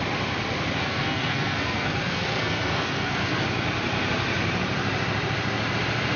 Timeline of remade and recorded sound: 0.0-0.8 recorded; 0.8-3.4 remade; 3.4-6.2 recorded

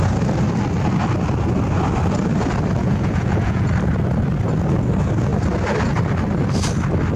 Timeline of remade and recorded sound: 0.0-2.8 recorded; 2.8-3.7 remade; 3.7-7.2 recorded

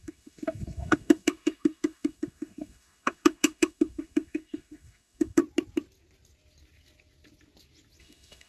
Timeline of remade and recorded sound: 0.0-5.4 remade; 5.4-8.0 recorded; 8.0-8.5 remade

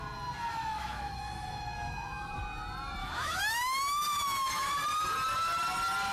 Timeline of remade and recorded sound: 0.0-0.5 recorded; 0.5-2.4 remade; 2.4-3.0 recorded; 3.0-4.7 remade; 4.7-6.1 recorded

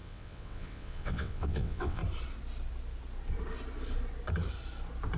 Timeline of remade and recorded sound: 0.0-2.0 remade; 2.0-5.2 recorded

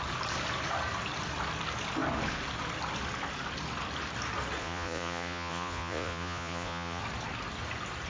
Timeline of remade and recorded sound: 0.0-4.6 recorded; 4.6-7.0 remade; 7.0-8.1 recorded

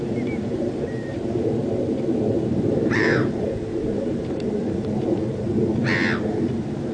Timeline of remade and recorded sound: 0.0-1.6 remade; 1.6-2.3 recorded; 2.3-5.7 remade; 5.7-6.3 recorded; 6.3-6.9 remade

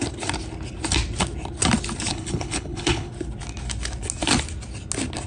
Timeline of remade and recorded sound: 0.0-2.1 recorded; 2.1-3.1 remade; 3.1-5.3 recorded